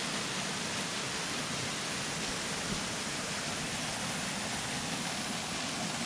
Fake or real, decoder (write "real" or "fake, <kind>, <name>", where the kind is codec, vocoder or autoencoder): real